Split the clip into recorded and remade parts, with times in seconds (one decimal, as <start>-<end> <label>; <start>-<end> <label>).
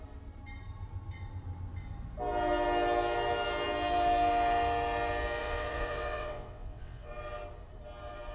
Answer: 0.0-5.4 recorded; 5.4-7.1 remade; 7.1-8.3 recorded